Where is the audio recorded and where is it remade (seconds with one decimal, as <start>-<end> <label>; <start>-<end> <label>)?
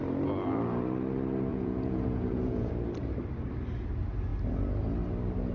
0.0-1.5 recorded; 1.5-2.7 remade; 2.7-5.5 recorded